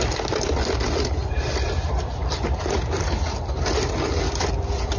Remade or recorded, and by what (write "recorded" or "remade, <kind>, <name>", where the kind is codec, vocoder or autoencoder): recorded